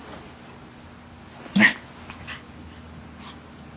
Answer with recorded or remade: recorded